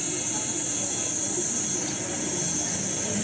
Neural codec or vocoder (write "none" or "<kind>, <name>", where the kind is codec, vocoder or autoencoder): vocoder, BigVGAN v2